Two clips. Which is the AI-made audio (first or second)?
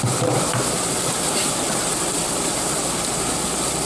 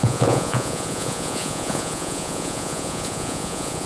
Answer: second